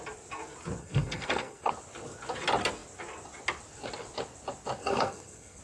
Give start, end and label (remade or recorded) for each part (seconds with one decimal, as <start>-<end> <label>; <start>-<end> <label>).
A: 0.0-0.8 recorded; 0.8-1.7 remade; 1.7-4.8 recorded; 4.8-5.6 remade